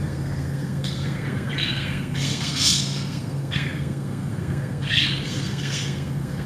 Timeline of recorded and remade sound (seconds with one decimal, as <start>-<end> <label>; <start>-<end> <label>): 0.0-6.5 remade